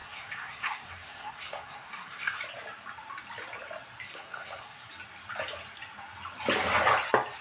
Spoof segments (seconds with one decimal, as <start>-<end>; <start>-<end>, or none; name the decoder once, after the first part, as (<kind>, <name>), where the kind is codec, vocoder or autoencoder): 0.0-2.4 (codec, SNAC); 4.1-4.9